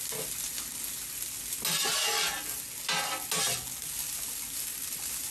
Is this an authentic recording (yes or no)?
yes